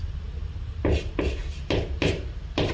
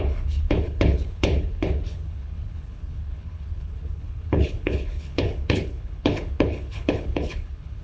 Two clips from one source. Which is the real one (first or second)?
first